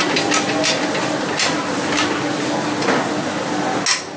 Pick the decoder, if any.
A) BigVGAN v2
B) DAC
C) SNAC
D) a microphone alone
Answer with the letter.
D